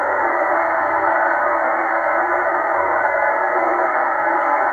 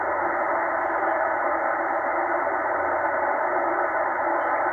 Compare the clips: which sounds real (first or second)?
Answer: second